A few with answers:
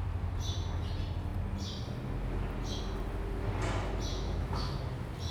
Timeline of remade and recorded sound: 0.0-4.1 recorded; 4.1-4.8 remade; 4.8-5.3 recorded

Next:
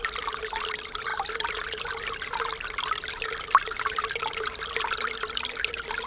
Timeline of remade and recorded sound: 0.0-6.1 recorded

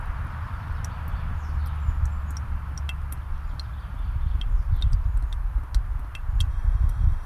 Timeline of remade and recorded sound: 0.0-6.5 recorded; 6.5-7.3 remade

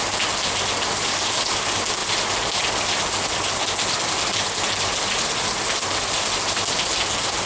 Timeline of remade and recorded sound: 0.0-7.5 recorded